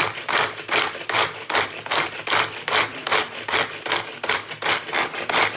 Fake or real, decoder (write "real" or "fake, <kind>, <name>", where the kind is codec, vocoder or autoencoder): real